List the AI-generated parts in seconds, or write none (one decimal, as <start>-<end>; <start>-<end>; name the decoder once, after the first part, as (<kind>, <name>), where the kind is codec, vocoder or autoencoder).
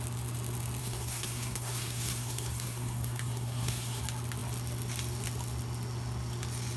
0.8-4.0 (codec, SNAC)